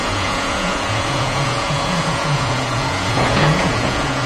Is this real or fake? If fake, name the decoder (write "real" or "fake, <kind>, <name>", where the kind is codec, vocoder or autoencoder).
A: fake, vocoder, Vocos